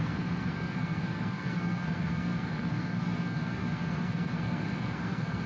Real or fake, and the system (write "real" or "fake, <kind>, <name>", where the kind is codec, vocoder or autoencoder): fake, codec, SNAC